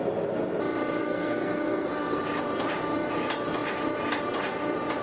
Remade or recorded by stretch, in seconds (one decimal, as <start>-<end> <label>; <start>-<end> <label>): 0.0-1.0 recorded; 1.0-2.2 remade; 2.2-5.0 recorded